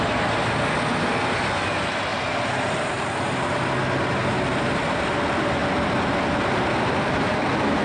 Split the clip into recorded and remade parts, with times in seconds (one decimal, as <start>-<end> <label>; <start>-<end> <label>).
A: 0.0-2.1 recorded; 2.1-3.1 remade; 3.1-7.8 recorded